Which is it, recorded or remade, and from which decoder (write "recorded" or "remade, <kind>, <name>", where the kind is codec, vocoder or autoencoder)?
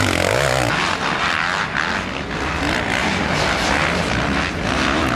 recorded